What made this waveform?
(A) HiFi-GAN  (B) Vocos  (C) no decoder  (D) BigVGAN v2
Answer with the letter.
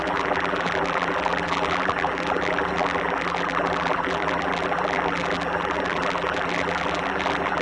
D